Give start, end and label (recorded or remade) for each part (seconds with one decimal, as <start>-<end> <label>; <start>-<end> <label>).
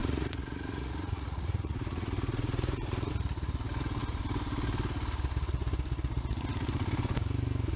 0.0-3.1 remade; 3.1-7.8 recorded